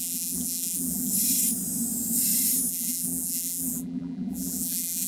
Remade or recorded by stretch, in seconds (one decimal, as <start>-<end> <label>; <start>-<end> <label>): 0.0-1.1 remade; 1.1-2.7 recorded; 2.7-5.1 remade